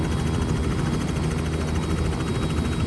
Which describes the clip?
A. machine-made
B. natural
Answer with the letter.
B